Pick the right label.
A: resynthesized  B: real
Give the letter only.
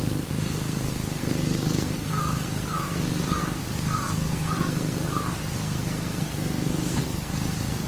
A